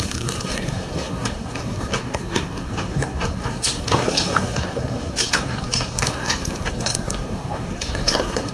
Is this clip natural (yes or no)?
no